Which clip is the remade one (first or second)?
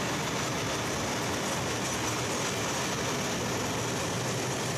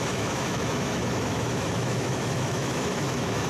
second